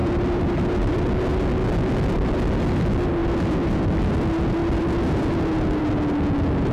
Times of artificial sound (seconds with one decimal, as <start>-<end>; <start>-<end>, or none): 0.0-0.6; 3.2-3.8; 4.6-5.8